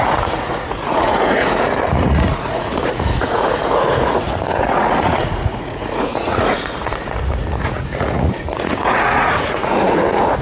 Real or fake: fake